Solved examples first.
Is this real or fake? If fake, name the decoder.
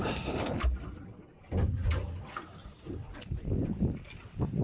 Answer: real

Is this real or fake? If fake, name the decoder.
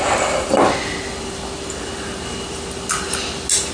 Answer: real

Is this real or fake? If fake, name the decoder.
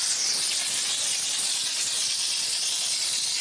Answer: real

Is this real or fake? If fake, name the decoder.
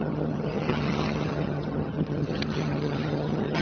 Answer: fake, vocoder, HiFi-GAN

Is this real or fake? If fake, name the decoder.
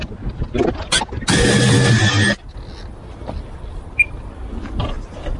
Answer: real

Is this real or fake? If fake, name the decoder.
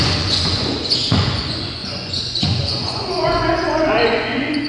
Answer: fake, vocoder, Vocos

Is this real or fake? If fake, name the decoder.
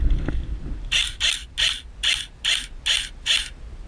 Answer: real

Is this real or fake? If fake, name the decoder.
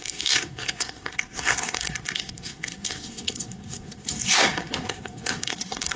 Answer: fake, codec, SNAC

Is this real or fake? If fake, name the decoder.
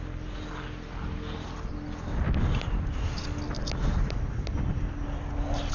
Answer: real